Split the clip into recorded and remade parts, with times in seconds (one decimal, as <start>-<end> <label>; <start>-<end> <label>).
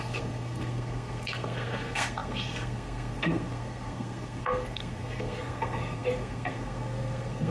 0.0-7.5 remade